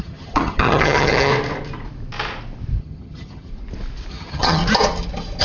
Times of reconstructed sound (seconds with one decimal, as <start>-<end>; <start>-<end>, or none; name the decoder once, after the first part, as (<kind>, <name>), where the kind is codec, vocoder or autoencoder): 0.0-1.3 (vocoder, HiFi-GAN); 2.8-3.5; 4.1-4.6